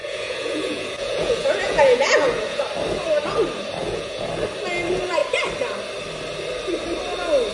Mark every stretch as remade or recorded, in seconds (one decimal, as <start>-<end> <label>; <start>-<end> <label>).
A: 0.0-2.6 remade; 2.6-3.8 recorded; 3.8-4.3 remade; 4.3-7.5 recorded